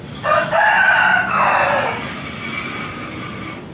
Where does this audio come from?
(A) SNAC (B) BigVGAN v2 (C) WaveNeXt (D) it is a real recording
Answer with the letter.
D